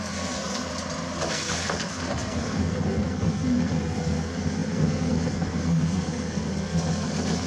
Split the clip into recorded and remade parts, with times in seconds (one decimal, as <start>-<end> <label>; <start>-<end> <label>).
0.0-0.7 remade; 0.7-1.3 recorded; 1.3-7.5 remade